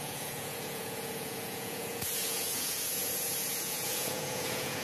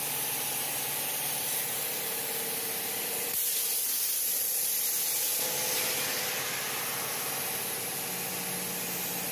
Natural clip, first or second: second